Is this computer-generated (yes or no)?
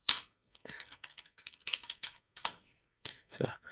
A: yes